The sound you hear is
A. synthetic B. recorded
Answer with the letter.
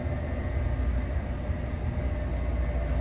B